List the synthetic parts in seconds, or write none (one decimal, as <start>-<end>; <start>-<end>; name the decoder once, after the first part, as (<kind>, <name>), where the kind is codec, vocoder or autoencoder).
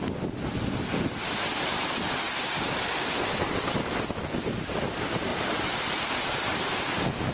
1.5-2.0 (vocoder, BigVGAN v2); 5.3-6.0